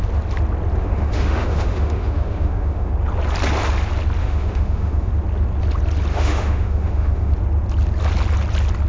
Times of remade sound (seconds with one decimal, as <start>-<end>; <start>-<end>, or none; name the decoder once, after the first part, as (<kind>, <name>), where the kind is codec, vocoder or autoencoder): 0.8-2.9 (autoencoder, DAC-VAE); 4.2-5.1; 6.1-7.3